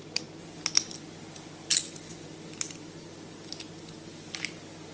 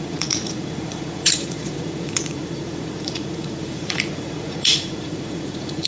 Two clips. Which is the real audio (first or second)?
first